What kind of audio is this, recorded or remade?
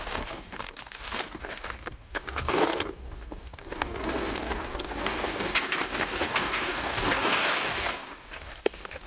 remade